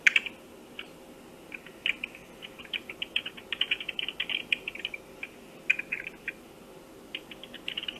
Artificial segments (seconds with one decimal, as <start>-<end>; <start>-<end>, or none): none